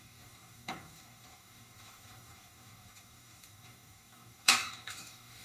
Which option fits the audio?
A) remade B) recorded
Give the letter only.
A